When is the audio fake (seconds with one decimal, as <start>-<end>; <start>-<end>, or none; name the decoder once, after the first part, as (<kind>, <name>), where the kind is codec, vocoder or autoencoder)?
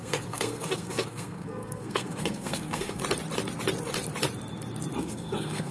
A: 0.0-3.0 (codec, SNAC); 5.0-5.7